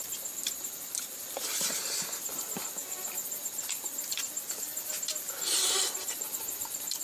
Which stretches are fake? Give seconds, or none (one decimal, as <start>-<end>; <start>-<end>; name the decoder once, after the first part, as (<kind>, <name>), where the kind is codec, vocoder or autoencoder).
0.0-7.0 (vocoder, BigVGAN v2)